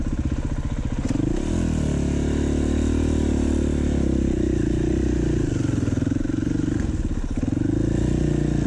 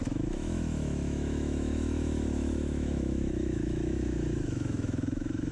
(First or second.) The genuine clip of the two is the first